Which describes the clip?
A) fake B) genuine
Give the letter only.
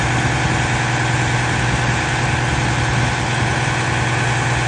B